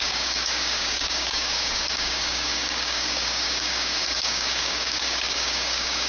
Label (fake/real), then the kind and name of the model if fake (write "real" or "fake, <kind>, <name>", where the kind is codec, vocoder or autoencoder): fake, codec, DAC